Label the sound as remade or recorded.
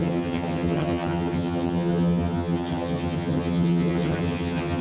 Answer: remade